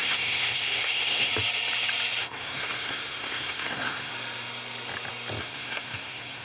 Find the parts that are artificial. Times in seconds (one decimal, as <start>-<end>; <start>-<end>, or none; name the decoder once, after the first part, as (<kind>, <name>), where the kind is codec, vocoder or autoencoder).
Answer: 0.0-1.3 (codec, SNAC); 2.2-4.1; 5.4-6.4